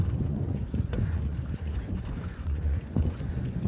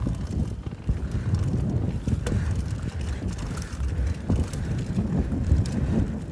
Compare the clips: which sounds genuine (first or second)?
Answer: second